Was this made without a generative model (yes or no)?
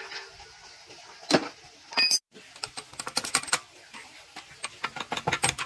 yes